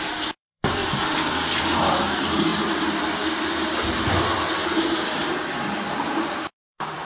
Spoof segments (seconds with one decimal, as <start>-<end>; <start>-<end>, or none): 0.0-0.8; 1.6-2.5; 4.8-7.0